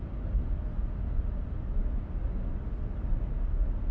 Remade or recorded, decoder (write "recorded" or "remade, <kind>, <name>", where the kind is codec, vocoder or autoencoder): recorded